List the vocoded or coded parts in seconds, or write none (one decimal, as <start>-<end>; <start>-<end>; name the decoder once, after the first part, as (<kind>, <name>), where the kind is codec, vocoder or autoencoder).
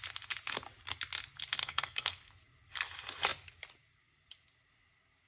1.6-2.3 (codec, SNAC)